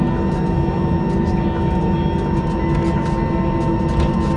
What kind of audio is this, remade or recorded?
recorded